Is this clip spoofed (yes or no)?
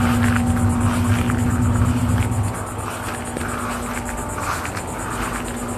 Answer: no